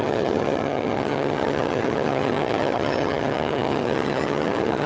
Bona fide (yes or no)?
no